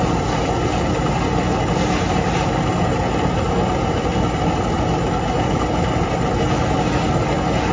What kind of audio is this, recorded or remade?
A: recorded